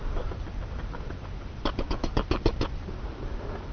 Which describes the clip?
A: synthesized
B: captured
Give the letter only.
B